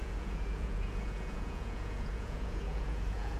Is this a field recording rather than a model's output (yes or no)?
no